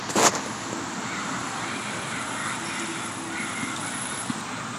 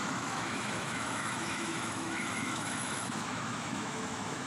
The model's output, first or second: second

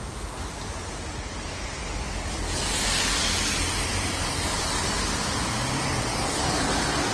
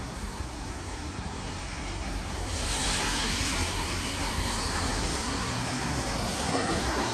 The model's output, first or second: second